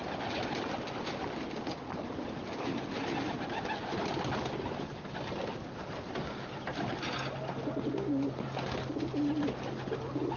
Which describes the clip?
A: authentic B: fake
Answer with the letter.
A